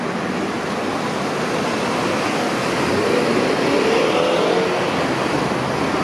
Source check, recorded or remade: recorded